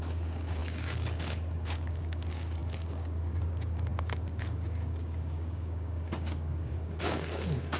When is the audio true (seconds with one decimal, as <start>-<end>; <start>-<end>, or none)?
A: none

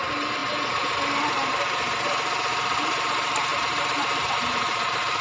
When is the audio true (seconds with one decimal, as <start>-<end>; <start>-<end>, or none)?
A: 0.0-5.2

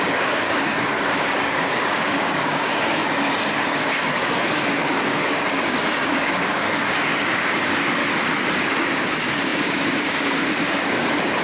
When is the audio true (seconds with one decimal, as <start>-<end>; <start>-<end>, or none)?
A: 8.0-8.5

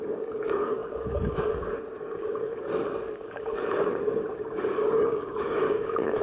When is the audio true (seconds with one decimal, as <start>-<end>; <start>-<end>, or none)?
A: none

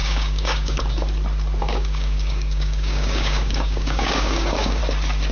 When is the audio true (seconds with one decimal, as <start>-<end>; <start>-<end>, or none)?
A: 0.8-1.6; 4.8-5.3

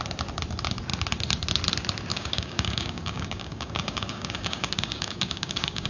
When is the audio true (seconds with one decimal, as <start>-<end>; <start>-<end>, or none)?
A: 0.0-2.1

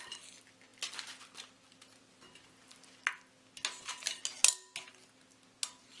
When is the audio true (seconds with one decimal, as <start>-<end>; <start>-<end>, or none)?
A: 0.0-6.0